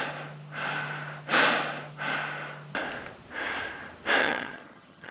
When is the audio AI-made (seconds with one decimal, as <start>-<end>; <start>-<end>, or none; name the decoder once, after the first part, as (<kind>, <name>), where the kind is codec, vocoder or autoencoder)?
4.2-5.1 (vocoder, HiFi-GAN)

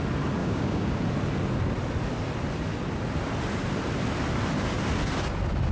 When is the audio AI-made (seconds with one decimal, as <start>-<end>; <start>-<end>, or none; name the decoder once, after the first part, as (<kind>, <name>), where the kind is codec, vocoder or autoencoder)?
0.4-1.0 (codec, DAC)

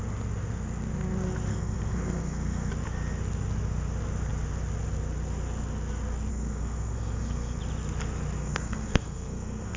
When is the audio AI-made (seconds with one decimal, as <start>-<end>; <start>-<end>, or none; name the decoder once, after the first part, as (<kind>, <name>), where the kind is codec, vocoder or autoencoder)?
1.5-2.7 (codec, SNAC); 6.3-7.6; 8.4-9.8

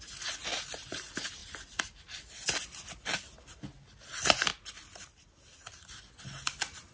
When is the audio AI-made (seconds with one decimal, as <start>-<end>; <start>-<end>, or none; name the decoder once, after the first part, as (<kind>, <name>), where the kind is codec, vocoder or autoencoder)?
none

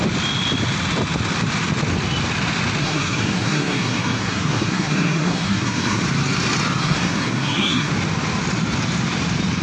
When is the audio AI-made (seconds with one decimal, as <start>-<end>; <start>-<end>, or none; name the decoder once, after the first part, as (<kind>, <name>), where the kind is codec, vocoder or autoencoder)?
2.8-6.0 (codec, SNAC); 6.8-7.9

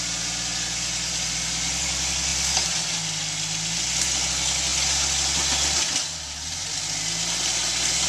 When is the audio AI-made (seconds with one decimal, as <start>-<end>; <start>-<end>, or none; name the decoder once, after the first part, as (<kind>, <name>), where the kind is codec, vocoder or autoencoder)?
none

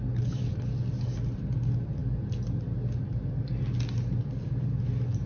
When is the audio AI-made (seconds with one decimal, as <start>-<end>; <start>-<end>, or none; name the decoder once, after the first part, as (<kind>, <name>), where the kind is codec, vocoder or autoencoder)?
none